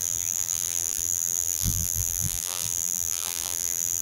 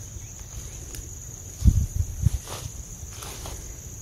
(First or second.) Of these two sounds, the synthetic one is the first